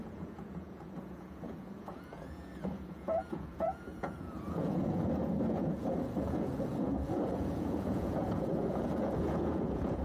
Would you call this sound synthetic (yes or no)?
yes